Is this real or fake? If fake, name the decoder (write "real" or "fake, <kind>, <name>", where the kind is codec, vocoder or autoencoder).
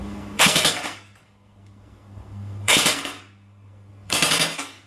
fake, codec, SNAC